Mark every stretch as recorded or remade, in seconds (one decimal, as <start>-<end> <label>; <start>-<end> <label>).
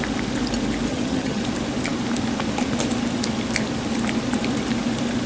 0.0-0.9 recorded; 0.9-1.4 remade; 1.4-5.3 recorded